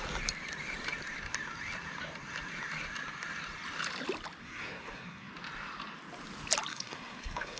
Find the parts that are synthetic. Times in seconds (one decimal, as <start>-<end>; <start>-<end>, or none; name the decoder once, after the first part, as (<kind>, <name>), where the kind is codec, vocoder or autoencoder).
4.4-5.3 (codec, SNAC); 6.7-7.6